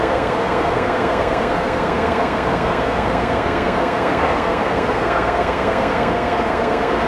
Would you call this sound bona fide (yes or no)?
no